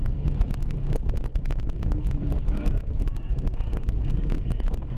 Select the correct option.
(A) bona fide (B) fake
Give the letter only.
B